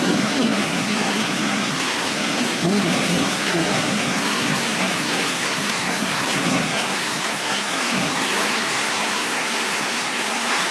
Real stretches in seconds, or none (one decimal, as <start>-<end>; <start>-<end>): none